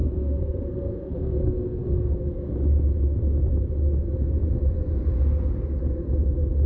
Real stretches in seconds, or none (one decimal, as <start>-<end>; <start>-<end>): 2.5-6.7